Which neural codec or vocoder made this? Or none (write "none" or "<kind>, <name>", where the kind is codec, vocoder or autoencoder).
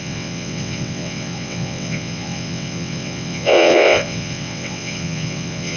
vocoder, WaveNeXt